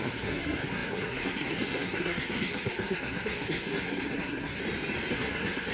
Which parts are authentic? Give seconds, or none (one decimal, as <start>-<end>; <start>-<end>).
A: 4.6-5.1